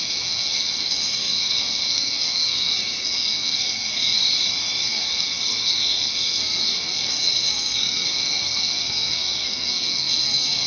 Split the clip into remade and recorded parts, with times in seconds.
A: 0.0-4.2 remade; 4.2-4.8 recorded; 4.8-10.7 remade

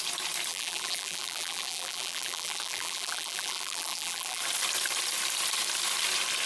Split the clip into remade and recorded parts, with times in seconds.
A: 0.0-0.5 recorded; 0.5-4.4 remade; 4.4-6.5 recorded

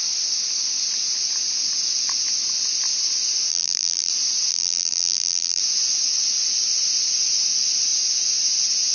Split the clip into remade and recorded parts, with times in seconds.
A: 0.0-3.5 recorded; 3.5-4.1 remade; 4.1-4.5 recorded; 4.5-5.6 remade; 5.6-8.9 recorded